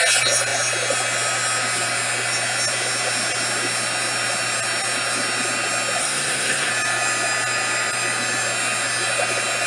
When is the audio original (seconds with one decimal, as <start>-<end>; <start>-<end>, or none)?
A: 0.0-6.0; 6.7-9.7